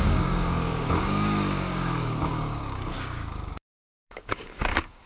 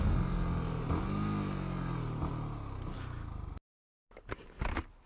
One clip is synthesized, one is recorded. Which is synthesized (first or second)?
first